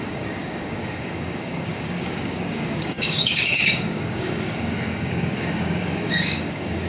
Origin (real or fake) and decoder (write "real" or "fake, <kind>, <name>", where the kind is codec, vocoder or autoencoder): fake, codec, DAC